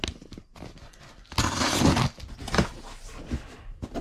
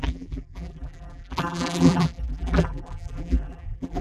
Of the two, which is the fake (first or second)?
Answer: second